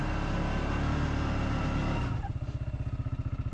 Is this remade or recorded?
recorded